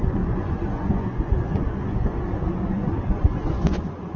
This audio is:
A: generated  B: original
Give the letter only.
A